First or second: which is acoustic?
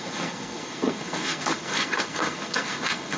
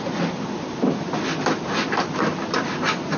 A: second